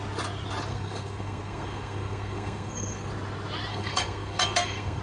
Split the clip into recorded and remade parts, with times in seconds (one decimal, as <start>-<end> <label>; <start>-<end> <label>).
0.0-0.7 recorded; 0.7-3.1 remade; 3.1-3.7 recorded; 3.7-5.0 remade